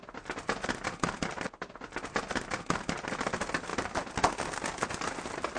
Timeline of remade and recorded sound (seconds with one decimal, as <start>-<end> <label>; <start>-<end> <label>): 0.0-5.6 recorded